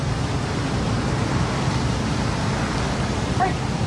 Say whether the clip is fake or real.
real